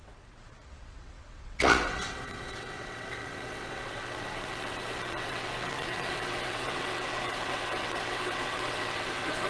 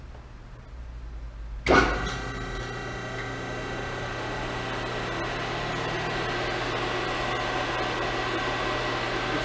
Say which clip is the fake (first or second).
first